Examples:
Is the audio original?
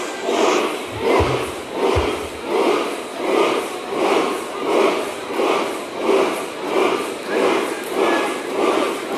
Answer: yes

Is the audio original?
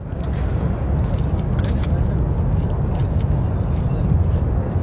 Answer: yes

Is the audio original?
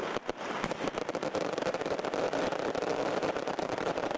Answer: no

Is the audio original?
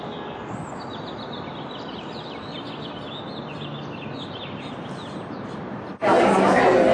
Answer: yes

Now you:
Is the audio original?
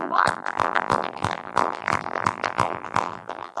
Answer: no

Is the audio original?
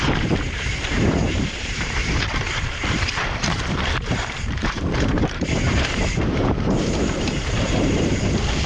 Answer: no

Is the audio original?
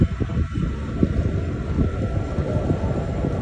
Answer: yes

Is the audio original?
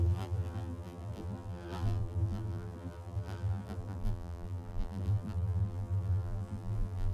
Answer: no